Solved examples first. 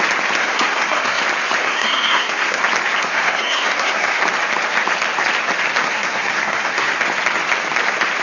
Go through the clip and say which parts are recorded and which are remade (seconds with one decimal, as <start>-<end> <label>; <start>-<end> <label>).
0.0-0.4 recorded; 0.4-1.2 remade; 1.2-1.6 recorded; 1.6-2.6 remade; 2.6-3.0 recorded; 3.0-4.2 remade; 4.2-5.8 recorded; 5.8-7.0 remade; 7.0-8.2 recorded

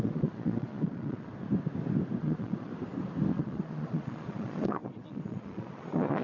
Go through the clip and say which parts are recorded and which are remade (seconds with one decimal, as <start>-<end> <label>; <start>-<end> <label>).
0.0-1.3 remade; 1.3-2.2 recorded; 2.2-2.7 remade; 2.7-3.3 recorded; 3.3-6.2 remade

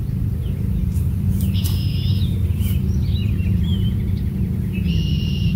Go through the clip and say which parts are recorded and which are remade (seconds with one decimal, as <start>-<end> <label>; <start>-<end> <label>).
0.0-5.6 remade

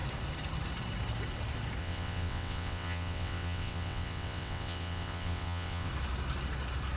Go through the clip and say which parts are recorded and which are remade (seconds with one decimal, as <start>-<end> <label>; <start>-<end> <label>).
0.0-1.8 recorded; 1.8-5.9 remade; 5.9-7.0 recorded

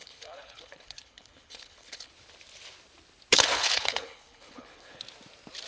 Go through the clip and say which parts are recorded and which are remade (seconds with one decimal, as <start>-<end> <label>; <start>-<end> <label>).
0.0-2.1 remade; 2.1-3.3 recorded; 3.3-5.0 remade; 5.0-5.7 recorded

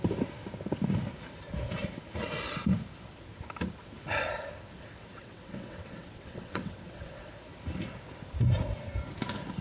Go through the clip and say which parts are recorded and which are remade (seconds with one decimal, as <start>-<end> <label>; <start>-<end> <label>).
0.0-5.0 recorded; 5.0-7.3 remade; 7.3-9.6 recorded